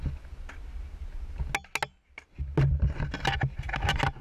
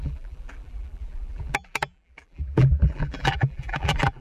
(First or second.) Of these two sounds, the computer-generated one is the second